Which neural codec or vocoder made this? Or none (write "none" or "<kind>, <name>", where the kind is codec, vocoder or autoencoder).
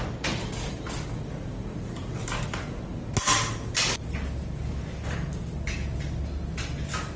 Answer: none